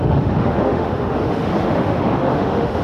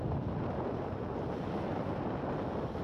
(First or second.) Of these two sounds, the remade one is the first